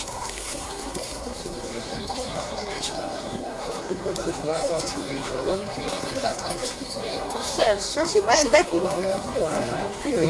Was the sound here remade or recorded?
remade